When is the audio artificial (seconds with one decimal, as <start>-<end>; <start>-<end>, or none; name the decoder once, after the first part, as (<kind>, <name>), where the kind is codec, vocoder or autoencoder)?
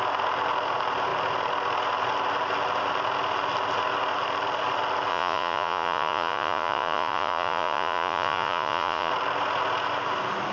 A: 5.1-9.1 (vocoder, Vocos)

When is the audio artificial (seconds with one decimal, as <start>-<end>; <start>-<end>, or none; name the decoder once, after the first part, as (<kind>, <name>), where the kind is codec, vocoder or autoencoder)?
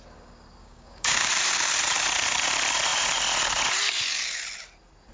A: 0.6-1.3 (codec, DAC)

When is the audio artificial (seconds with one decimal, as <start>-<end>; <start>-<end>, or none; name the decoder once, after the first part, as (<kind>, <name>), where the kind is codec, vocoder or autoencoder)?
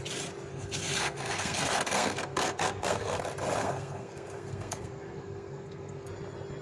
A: 0.5-3.2 (codec, SNAC); 3.6-6.1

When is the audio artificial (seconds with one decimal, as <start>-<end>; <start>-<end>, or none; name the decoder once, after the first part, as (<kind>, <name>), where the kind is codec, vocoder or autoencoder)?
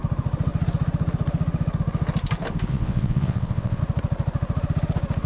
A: 2.7-3.8 (vocoder, WaveNeXt)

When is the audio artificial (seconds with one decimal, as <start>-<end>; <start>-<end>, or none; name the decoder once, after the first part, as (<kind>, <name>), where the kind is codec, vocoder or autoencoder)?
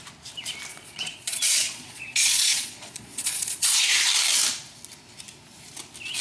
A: 0.7-4.1 (vocoder, Vocos)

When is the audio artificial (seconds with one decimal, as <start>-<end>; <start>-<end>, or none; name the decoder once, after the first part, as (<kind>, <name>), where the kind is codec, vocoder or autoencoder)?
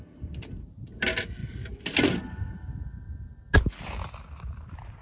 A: none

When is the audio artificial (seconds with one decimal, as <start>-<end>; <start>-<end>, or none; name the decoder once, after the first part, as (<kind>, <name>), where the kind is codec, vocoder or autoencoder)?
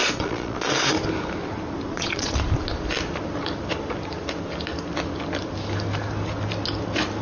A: 0.0-0.6 (vocoder, Vocos); 1.9-2.4